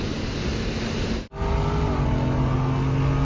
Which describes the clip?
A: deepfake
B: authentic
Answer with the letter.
B